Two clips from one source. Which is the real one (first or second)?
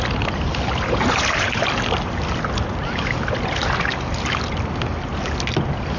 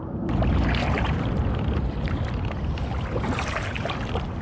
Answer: first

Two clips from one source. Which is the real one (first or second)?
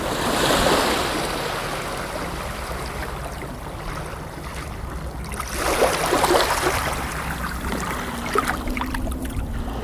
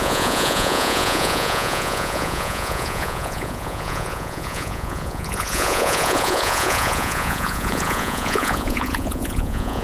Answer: first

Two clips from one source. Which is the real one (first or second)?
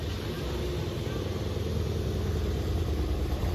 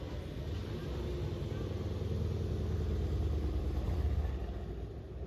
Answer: second